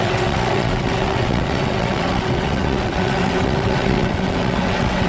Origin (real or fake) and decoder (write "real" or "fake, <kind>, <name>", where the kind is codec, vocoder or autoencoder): fake, vocoder, WaveNeXt